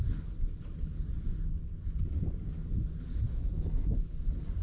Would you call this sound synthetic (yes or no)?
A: no